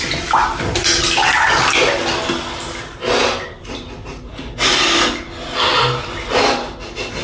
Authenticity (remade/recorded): recorded